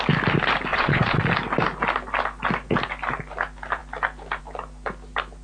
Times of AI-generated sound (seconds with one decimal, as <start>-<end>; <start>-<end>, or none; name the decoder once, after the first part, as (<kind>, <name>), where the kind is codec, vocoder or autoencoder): 0.7-1.2 (vocoder, Vocos)